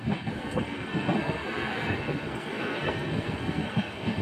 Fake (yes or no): yes